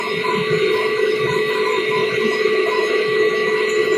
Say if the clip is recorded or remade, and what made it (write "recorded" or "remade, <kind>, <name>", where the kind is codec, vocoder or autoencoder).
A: remade, autoencoder, DAC-VAE